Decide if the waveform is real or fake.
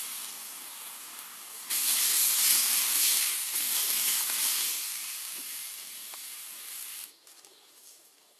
fake